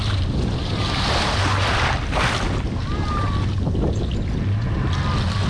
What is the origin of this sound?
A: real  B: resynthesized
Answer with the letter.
A